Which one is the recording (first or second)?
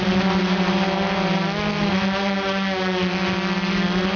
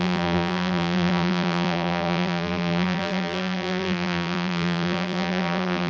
first